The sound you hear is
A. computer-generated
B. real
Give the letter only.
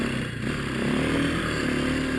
B